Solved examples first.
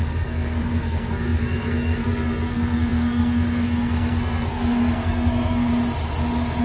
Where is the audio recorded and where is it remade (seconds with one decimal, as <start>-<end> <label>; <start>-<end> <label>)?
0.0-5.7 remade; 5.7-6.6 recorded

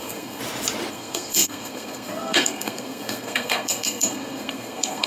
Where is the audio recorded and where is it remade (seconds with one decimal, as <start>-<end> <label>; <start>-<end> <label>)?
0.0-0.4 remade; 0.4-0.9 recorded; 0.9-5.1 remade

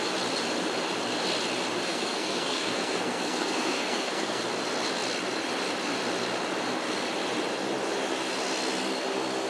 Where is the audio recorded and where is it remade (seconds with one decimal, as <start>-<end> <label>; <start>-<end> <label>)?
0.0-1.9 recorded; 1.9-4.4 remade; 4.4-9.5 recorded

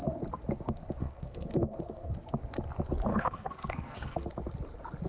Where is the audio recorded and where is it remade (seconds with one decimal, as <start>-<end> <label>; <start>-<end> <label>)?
0.0-1.0 recorded; 1.0-2.1 remade; 2.1-3.1 recorded; 3.1-4.3 remade; 4.3-5.1 recorded